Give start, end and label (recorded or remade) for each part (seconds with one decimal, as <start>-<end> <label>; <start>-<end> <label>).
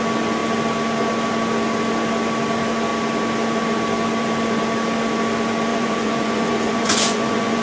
0.0-5.7 recorded; 5.7-7.6 remade